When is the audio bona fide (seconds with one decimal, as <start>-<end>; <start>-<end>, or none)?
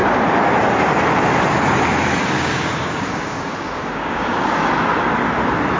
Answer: 0.0-2.2; 4.6-5.8